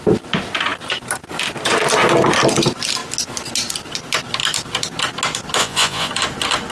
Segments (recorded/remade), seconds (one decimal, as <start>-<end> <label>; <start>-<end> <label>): 0.0-5.6 recorded; 5.6-6.1 remade; 6.1-6.7 recorded

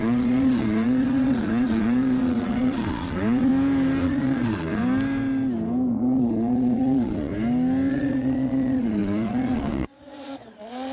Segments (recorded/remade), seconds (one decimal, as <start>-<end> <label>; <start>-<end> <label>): 0.0-3.5 remade; 3.5-4.0 recorded; 4.0-4.8 remade; 4.8-5.9 recorded; 5.9-7.3 remade; 7.3-7.9 recorded; 7.9-10.9 remade